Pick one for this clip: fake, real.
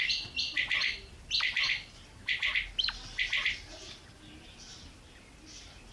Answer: real